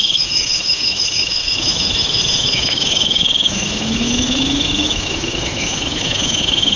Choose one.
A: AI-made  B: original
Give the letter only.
A